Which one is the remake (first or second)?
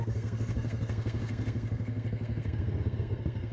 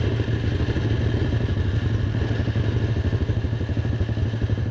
first